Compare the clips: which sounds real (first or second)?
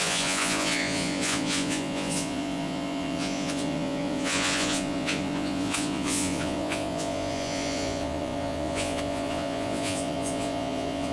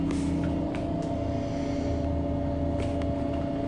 second